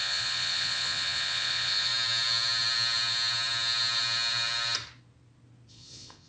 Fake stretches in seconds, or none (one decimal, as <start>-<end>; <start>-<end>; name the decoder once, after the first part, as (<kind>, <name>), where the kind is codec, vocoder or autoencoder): 0.0-1.9 (vocoder, Vocos); 5.7-6.3

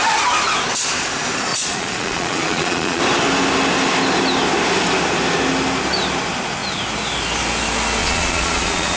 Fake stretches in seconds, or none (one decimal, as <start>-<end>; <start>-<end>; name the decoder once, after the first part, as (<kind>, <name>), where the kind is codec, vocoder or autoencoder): 1.5-3.0 (vocoder, Vocos); 8.0-9.0

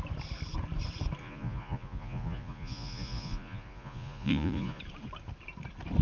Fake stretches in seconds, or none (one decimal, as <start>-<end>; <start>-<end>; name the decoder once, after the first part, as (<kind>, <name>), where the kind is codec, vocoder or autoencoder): 1.2-4.8 (vocoder, Vocos)

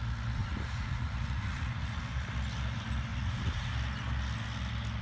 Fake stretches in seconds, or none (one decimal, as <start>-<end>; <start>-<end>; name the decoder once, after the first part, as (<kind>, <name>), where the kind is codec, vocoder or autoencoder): 0.4-2.0 (vocoder, Vocos); 3.1-3.7

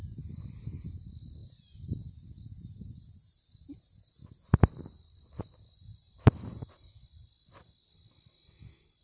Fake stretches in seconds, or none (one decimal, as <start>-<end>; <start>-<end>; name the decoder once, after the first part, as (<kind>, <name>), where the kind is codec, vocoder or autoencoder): none

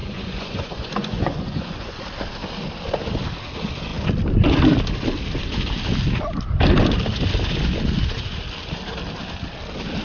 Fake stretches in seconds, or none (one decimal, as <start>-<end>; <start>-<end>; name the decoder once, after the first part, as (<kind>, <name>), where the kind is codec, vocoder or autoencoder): 0.0-2.0 (vocoder, Vocos)

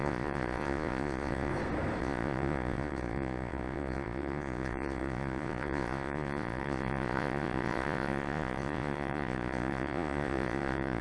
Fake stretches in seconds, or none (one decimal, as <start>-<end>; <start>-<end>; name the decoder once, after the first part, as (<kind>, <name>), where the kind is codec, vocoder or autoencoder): 0.0-1.5 (vocoder, Vocos); 2.0-11.0